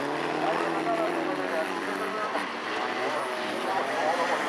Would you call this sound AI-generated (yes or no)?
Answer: no